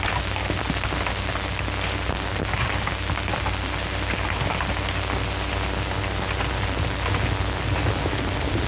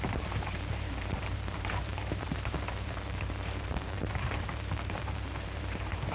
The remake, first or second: second